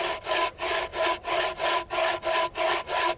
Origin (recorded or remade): recorded